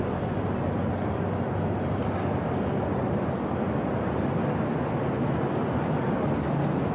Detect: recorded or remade recorded